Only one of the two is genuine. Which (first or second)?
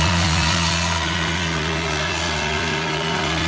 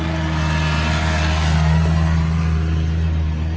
second